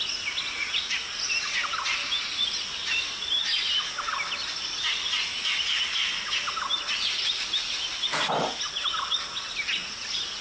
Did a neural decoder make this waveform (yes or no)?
no